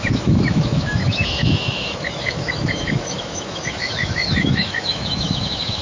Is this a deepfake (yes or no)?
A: yes